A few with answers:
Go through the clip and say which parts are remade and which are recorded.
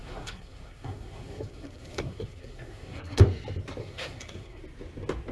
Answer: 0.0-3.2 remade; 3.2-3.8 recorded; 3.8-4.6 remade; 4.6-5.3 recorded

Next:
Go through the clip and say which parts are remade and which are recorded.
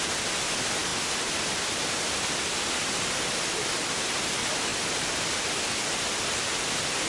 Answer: 0.0-7.1 recorded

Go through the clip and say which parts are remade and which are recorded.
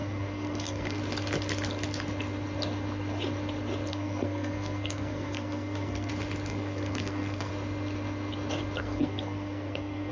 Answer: 0.0-1.0 remade; 1.0-3.9 recorded; 3.9-6.1 remade; 6.1-6.5 recorded; 6.5-7.5 remade; 7.5-8.8 recorded; 8.8-10.1 remade